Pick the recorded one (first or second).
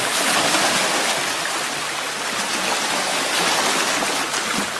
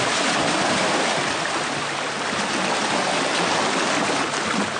first